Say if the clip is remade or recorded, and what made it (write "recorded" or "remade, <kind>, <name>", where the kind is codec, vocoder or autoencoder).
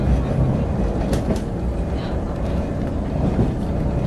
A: recorded